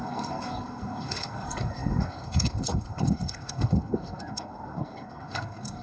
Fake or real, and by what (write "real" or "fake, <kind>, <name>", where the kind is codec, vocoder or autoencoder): fake, codec, SNAC